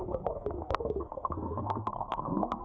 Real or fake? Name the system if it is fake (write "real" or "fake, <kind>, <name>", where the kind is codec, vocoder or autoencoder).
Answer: fake, codec, SNAC